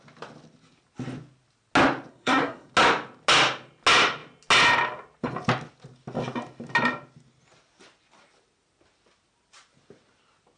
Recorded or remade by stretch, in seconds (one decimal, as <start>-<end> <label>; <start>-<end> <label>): 0.0-2.1 recorded; 2.1-2.7 remade; 2.7-10.6 recorded